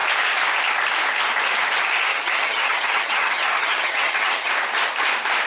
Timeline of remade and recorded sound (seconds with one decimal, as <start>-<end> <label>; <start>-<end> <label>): 0.0-2.1 recorded; 2.1-4.5 remade; 4.5-5.5 recorded